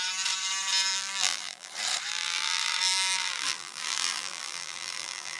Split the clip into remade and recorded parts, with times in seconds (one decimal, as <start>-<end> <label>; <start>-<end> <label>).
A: 0.0-0.9 recorded; 0.9-1.7 remade; 1.7-2.1 recorded; 2.1-5.4 remade